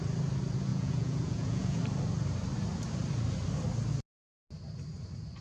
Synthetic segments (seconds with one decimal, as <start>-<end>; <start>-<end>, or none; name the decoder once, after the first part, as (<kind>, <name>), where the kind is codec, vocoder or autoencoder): 0.7-1.8 (vocoder, Vocos)